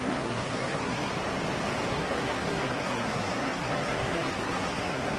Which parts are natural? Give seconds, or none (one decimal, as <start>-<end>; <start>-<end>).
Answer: 1.1-1.9